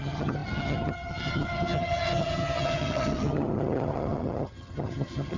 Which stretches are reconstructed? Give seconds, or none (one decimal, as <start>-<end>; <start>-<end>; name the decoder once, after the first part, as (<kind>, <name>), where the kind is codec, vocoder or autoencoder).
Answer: 0.0-5.4 (vocoder, HiFi-GAN)